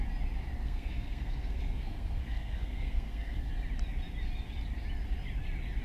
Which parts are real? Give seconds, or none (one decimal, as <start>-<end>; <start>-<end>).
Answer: 0.0-0.6; 3.5-5.8